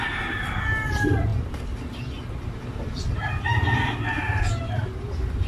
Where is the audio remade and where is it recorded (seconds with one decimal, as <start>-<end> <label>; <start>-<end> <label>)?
0.0-5.5 recorded